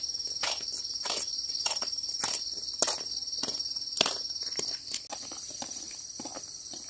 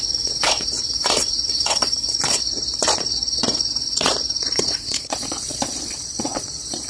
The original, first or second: first